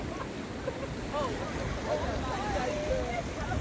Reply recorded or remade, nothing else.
recorded